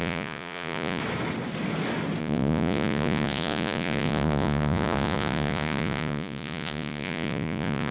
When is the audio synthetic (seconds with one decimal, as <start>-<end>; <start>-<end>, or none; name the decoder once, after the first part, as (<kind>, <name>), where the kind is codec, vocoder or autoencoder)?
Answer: 0.0-1.0 (vocoder, Vocos); 2.2-7.9